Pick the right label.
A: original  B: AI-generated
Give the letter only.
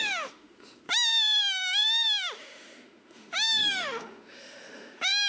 B